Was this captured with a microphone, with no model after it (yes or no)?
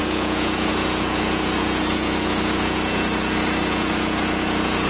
no